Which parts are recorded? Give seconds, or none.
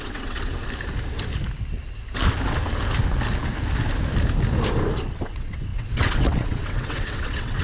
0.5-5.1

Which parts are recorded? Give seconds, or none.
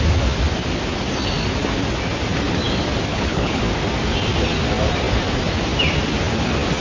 0.0-3.1; 3.6-6.8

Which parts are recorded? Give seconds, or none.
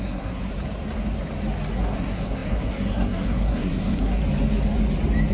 0.5-1.7; 4.2-5.3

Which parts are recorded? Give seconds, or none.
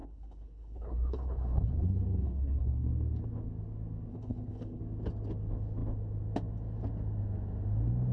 2.9-4.1; 4.8-8.1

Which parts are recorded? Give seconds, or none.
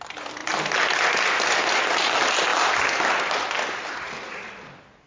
0.0-5.1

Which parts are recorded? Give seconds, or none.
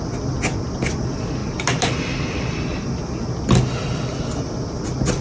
0.0-5.2